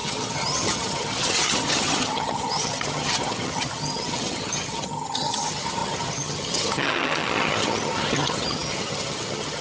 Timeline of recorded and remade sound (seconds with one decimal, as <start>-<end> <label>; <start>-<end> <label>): 0.0-9.6 remade